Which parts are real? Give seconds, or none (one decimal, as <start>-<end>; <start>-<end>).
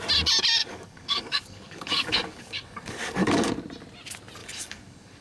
0.0-0.6; 3.5-4.4